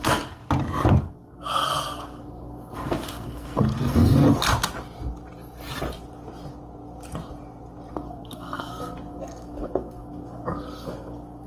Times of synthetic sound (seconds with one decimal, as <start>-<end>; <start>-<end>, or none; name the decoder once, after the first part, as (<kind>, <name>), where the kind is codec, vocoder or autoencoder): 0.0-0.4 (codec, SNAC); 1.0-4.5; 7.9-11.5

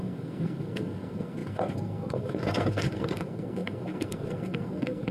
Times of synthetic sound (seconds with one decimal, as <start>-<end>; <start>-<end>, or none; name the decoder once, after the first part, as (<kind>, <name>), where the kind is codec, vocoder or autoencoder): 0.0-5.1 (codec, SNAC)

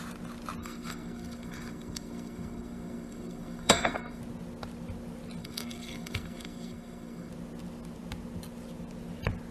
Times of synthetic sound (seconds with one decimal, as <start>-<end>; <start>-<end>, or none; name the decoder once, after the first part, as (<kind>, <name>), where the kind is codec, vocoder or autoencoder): 0.6-4.2 (codec, SNAC); 5.4-7.3